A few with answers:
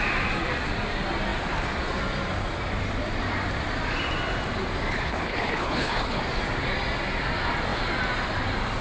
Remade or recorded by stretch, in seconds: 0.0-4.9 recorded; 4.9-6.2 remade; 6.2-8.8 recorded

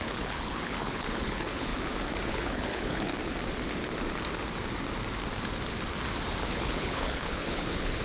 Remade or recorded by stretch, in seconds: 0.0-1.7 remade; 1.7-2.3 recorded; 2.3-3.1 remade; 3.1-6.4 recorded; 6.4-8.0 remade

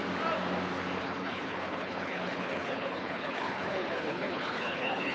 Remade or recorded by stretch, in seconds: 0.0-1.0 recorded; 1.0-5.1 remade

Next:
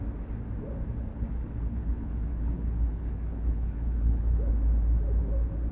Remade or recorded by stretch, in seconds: 0.0-1.1 recorded; 1.1-4.5 remade; 4.5-5.7 recorded

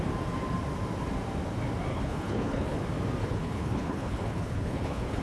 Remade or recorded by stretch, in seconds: 0.0-1.9 recorded; 1.9-2.8 remade; 2.8-3.2 recorded; 3.2-5.2 remade

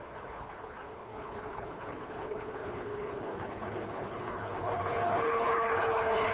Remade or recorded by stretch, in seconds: 0.0-6.3 remade